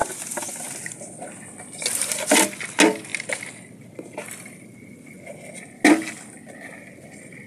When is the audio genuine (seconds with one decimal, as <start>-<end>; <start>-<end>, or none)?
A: 0.0-7.5